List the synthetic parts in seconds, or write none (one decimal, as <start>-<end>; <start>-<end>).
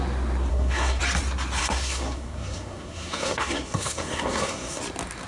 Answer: 0.5-1.0; 1.6-4.8